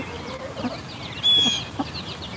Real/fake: real